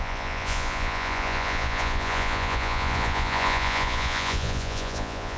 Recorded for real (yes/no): no